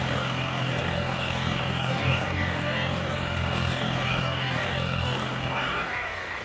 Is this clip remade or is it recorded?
remade